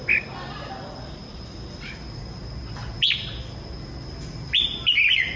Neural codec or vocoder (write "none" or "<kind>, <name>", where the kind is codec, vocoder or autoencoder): none